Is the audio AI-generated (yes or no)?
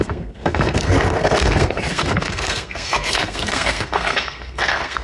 yes